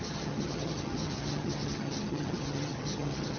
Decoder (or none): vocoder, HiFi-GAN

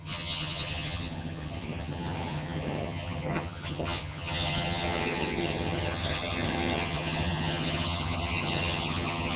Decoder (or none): vocoder, HiFi-GAN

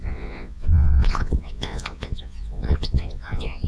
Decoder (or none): vocoder, Vocos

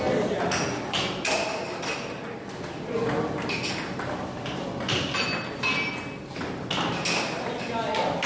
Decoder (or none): none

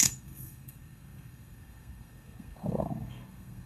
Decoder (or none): codec, SNAC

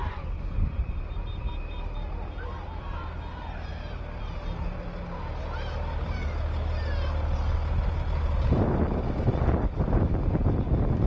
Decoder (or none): none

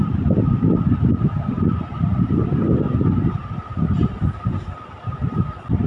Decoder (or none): vocoder, BigVGAN v2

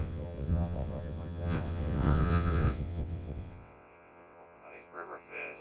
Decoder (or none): vocoder, WaveNeXt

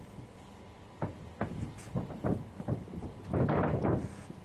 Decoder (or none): none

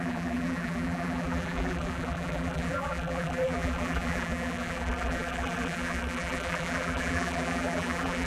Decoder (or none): vocoder, BigVGAN v2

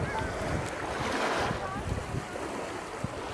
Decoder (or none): none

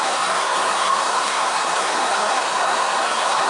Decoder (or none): codec, SNAC